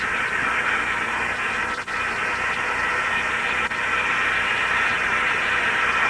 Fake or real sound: real